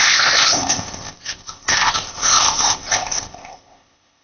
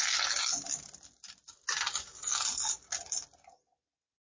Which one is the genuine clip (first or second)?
second